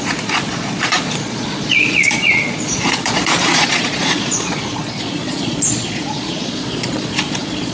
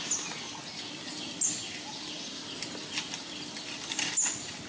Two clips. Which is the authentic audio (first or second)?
second